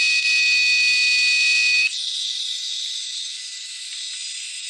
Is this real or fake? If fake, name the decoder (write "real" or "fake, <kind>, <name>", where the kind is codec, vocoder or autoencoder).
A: real